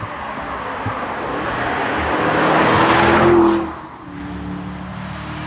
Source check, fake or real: real